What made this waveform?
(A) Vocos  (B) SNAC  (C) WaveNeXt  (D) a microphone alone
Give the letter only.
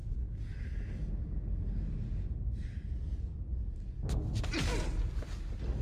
D